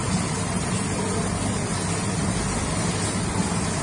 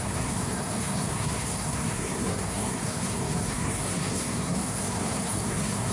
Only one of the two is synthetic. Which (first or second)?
second